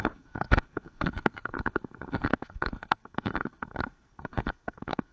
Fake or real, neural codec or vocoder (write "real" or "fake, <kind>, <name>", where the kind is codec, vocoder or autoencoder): fake, codec, SNAC